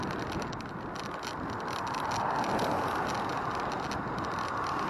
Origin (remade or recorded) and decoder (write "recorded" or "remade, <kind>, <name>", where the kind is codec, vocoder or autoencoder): recorded